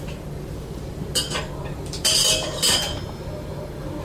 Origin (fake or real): fake